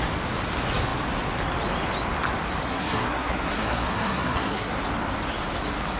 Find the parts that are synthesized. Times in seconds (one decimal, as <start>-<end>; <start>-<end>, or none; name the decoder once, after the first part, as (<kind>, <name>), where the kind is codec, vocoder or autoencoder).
2.6-4.8 (codec, SNAC)